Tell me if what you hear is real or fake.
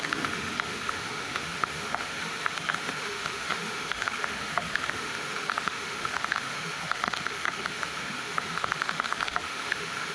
fake